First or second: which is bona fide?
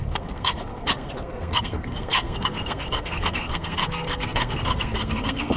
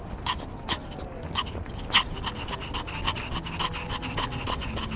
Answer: second